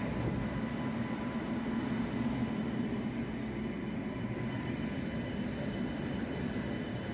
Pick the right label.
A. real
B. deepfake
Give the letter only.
A